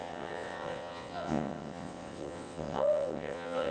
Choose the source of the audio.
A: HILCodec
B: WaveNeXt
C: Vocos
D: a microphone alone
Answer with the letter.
B